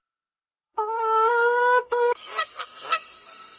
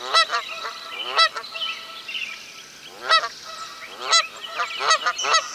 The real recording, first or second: second